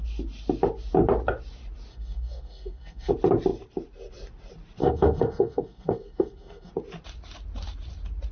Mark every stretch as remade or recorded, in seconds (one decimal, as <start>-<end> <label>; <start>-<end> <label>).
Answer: 0.0-1.9 recorded; 1.9-3.1 remade; 3.1-4.8 recorded; 4.8-6.7 remade; 6.7-8.3 recorded